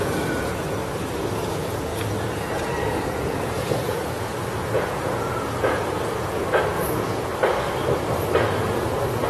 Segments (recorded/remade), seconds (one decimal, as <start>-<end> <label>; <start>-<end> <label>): 0.0-0.8 remade; 0.8-1.5 recorded; 1.5-7.3 remade; 7.3-8.4 recorded; 8.4-9.3 remade